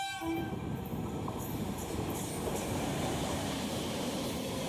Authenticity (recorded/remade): remade